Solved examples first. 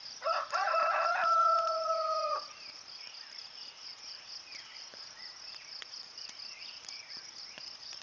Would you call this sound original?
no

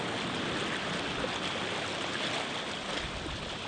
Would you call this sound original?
yes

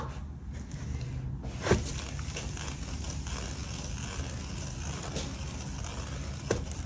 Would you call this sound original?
yes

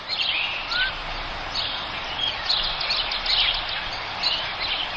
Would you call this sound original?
yes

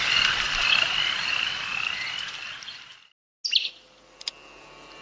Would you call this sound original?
yes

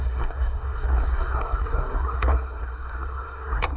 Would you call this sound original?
no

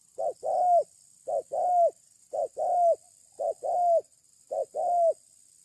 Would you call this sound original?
yes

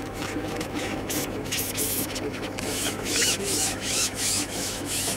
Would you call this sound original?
no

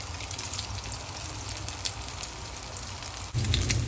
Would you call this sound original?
yes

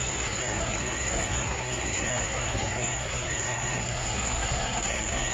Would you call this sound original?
no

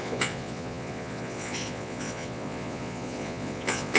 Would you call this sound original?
no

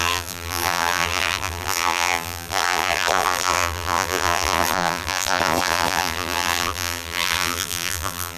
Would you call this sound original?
no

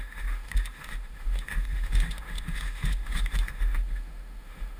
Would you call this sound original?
no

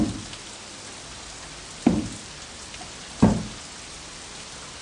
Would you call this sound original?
yes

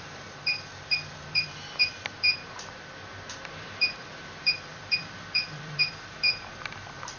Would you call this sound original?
no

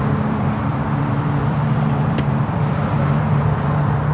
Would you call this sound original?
no